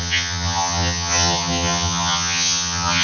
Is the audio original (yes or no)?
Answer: no